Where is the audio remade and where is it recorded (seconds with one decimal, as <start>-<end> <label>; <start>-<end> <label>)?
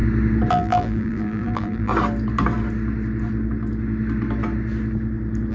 0.0-0.5 recorded; 0.5-1.9 remade; 1.9-5.5 recorded